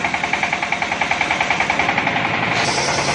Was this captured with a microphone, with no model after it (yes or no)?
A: yes